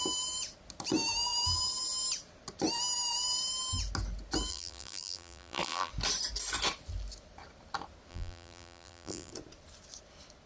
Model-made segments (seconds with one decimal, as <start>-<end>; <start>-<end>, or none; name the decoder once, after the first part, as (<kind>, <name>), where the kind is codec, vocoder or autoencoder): 4.5-5.9 (vocoder, BigVGAN v2); 8.1-9.3